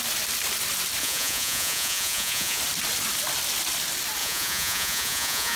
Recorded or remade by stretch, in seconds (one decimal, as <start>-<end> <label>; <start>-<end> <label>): 0.0-1.0 recorded; 1.0-2.6 remade; 2.6-4.2 recorded; 4.2-5.6 remade